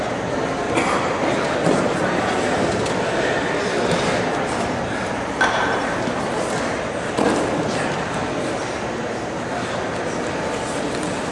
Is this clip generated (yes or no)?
no